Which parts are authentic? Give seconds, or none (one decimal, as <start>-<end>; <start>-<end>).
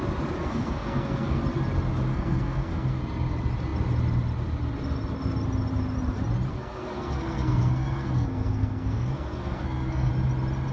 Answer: 0.0-0.4; 1.4-2.1; 3.0-6.5; 10.1-10.7